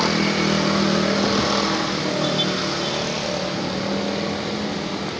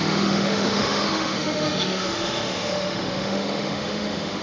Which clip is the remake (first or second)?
second